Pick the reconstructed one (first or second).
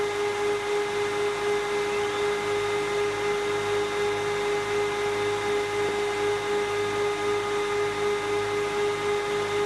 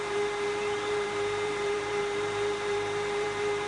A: second